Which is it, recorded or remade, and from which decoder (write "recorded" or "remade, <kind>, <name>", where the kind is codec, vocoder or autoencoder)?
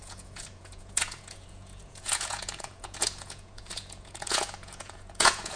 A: remade, vocoder, Vocos